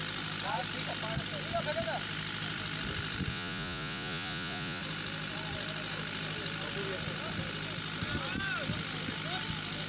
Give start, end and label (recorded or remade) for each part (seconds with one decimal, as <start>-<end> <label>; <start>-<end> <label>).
0.0-3.3 recorded; 3.3-4.8 remade; 4.8-9.9 recorded